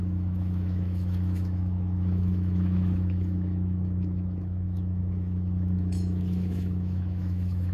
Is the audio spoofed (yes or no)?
yes